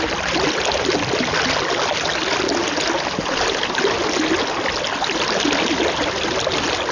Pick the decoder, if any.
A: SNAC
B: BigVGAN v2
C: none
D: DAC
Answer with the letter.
C